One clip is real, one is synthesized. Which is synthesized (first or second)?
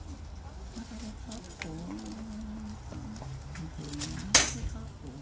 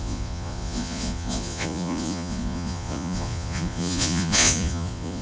second